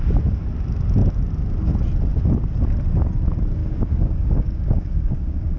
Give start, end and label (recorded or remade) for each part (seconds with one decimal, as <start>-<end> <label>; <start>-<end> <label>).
0.0-3.6 recorded; 3.6-5.6 remade